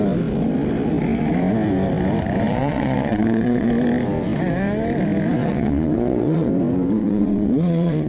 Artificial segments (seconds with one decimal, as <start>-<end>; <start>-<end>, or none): 2.5-3.7; 5.4-6.5; 7.0-8.1